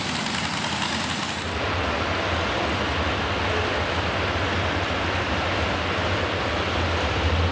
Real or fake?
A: real